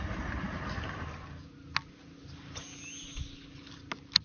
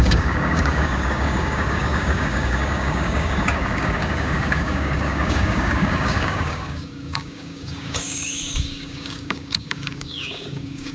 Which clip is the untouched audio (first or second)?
first